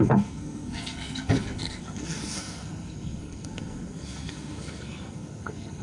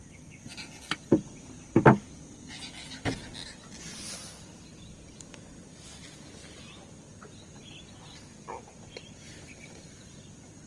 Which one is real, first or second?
second